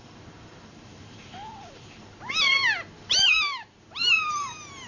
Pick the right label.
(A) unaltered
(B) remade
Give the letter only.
B